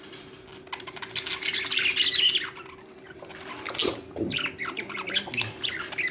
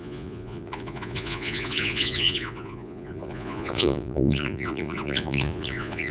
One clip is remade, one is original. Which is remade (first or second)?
second